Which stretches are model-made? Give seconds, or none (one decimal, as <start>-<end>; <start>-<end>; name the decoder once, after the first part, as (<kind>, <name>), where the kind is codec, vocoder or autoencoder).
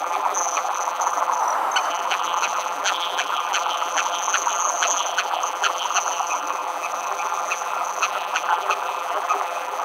0.0-1.4 (vocoder, BigVGAN v2); 1.9-9.8